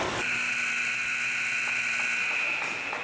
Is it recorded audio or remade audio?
recorded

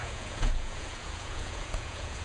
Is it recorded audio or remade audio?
remade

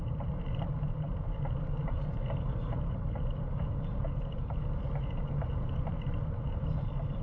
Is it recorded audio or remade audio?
remade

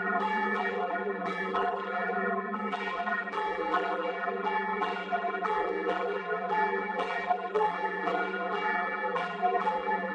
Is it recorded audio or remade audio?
remade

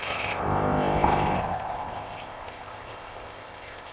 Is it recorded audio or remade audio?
remade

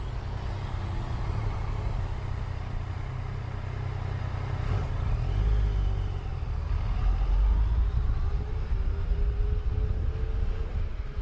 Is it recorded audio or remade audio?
recorded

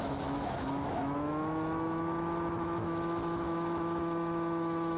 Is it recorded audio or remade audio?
remade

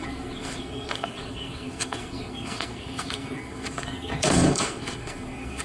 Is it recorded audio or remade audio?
remade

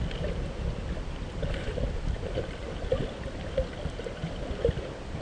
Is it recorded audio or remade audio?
recorded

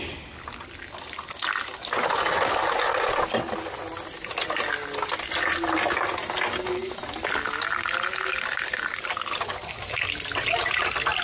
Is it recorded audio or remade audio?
recorded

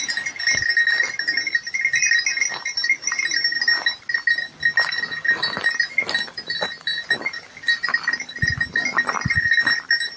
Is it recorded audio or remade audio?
recorded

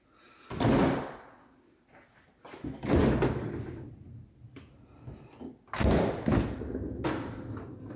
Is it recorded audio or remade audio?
recorded